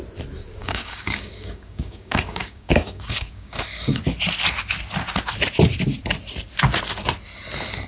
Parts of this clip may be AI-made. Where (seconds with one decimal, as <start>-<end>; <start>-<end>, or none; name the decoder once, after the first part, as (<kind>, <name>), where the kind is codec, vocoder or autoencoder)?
0.6-4.0 (codec, DAC)